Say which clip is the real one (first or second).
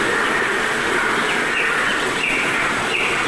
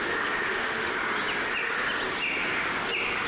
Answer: second